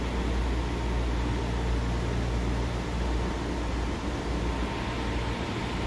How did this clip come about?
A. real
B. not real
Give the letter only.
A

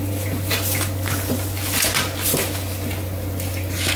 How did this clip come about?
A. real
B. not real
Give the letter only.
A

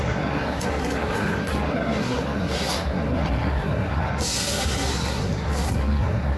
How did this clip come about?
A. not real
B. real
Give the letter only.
A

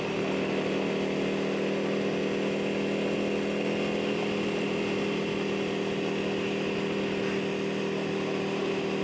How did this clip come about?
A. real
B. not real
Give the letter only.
A